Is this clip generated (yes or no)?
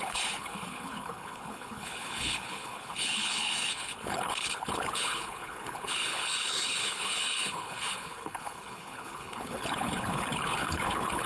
yes